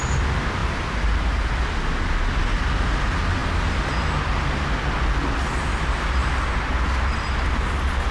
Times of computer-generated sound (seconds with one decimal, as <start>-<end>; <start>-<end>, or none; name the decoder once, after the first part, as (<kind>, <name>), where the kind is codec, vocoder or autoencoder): none